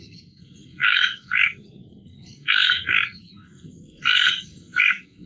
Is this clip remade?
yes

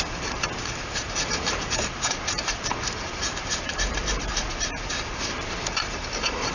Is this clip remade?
yes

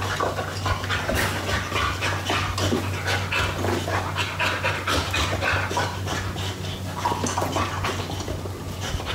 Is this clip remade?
no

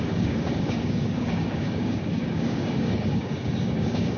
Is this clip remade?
yes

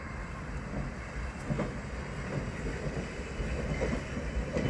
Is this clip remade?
no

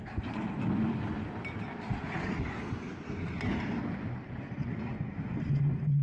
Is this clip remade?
no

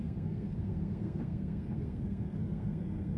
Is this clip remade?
yes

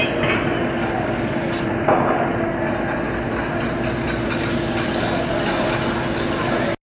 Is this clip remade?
no